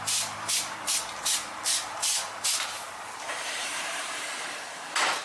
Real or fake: fake